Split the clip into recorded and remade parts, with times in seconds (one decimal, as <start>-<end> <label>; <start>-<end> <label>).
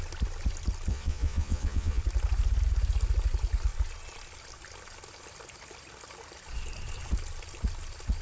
0.0-0.9 recorded; 0.9-2.0 remade; 2.0-8.2 recorded